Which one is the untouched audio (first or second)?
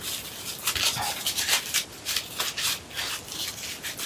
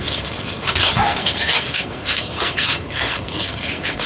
first